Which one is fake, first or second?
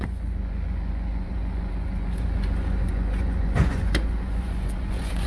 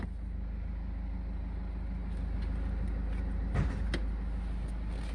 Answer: first